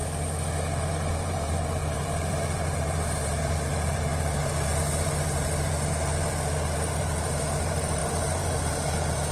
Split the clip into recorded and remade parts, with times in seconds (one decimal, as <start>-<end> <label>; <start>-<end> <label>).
0.0-1.1 recorded; 1.1-9.3 remade

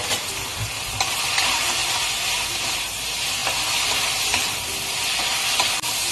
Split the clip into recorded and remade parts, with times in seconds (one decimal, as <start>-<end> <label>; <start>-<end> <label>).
0.0-6.1 recorded

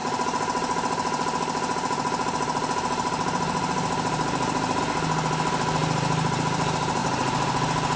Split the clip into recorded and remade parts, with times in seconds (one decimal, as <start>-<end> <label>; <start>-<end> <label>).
0.0-8.0 recorded

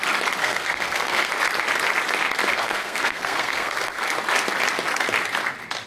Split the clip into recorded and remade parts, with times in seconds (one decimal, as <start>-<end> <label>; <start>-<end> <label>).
0.0-0.4 recorded; 0.4-1.3 remade; 1.3-2.5 recorded; 2.5-4.0 remade; 4.0-5.9 recorded

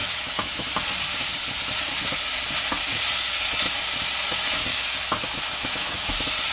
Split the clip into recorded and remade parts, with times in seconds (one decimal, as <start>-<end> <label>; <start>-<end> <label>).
0.0-0.7 remade; 0.7-4.7 recorded; 4.7-6.1 remade; 6.1-6.5 recorded

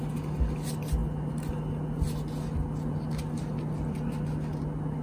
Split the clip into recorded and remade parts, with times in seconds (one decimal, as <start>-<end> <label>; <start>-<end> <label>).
0.0-5.0 recorded

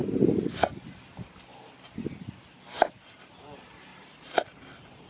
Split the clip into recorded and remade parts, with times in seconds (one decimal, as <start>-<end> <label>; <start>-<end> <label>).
0.0-3.9 recorded; 3.9-5.1 remade